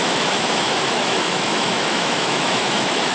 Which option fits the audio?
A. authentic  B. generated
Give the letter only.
B